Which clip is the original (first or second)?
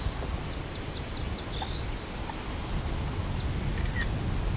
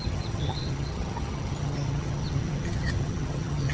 first